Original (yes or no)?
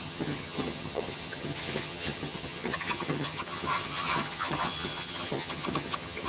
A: no